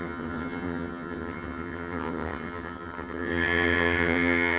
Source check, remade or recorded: remade